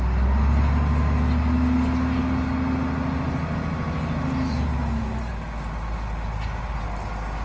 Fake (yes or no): no